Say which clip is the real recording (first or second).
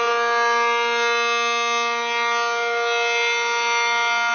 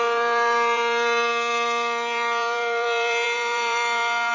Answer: first